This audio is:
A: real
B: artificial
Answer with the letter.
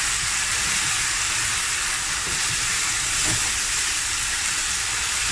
A